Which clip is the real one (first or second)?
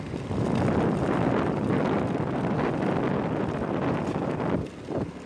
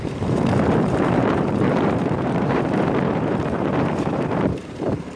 first